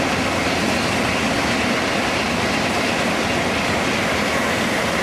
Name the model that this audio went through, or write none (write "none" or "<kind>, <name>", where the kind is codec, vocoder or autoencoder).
none